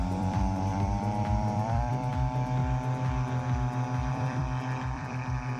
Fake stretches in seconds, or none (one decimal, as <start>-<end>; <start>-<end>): 0.0-2.6; 4.1-5.6